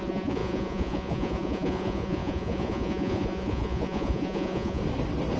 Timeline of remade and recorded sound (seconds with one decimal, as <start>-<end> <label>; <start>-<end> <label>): 0.0-4.8 remade; 4.8-5.4 recorded

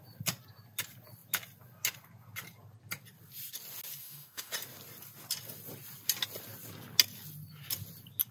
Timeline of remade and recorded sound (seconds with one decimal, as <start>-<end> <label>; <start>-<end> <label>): 0.0-4.0 recorded; 4.0-4.5 remade; 4.5-8.3 recorded

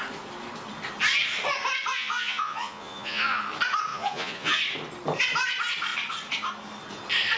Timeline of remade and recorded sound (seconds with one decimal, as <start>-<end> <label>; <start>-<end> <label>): 0.0-1.9 recorded; 1.9-3.4 remade; 3.4-3.9 recorded; 3.9-4.6 remade; 4.6-7.4 recorded

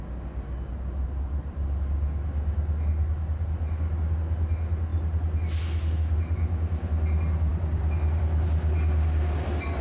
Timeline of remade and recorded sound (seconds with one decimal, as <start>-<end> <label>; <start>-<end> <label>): 0.0-9.8 recorded

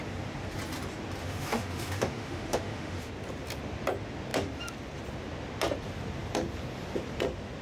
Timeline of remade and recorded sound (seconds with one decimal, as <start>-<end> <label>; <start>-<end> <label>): 0.0-1.2 recorded; 1.2-3.1 remade; 3.1-7.6 recorded

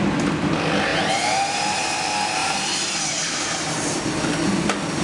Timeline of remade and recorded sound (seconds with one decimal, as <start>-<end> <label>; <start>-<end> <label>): 0.0-0.9 recorded; 0.9-2.0 remade; 2.0-2.4 recorded; 2.4-4.2 remade; 4.2-5.0 recorded

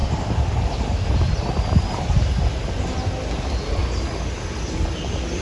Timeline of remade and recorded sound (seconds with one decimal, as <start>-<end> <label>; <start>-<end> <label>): 0.0-5.4 recorded

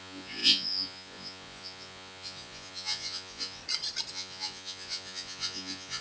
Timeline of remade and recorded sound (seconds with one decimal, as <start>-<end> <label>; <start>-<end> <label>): 0.0-3.6 remade; 3.6-4.1 recorded; 4.1-6.0 remade